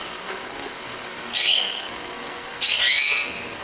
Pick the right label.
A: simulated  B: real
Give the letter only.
A